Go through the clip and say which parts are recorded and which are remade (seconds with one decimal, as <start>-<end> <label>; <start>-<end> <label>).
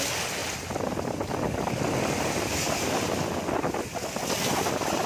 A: 0.0-5.1 recorded